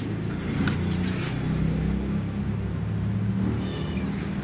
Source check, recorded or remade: recorded